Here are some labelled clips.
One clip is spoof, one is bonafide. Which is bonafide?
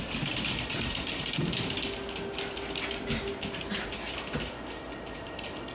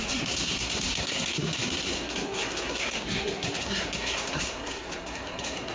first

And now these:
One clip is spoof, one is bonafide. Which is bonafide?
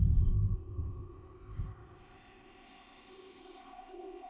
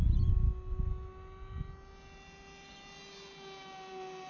second